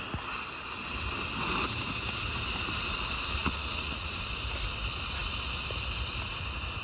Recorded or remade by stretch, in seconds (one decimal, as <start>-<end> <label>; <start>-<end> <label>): 0.0-3.4 recorded; 3.4-4.1 remade; 4.1-6.8 recorded